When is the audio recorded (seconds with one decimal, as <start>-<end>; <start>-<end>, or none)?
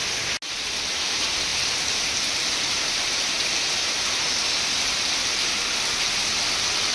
0.0-1.5; 5.6-6.9